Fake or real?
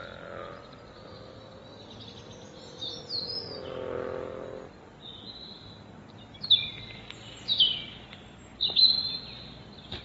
real